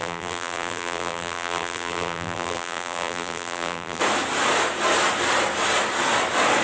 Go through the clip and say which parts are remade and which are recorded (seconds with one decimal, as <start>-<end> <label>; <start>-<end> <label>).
0.0-4.0 remade; 4.0-6.6 recorded